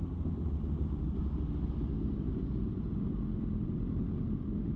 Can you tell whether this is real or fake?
real